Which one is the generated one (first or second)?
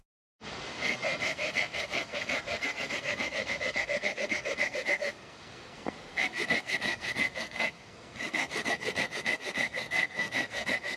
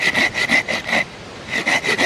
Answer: first